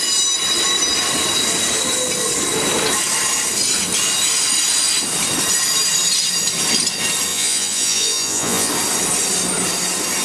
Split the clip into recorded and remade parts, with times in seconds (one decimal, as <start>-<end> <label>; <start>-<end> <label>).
0.0-7.3 recorded; 7.3-8.7 remade; 8.7-10.2 recorded